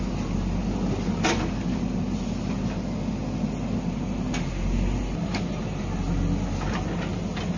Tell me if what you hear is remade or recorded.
recorded